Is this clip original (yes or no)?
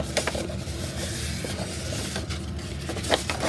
yes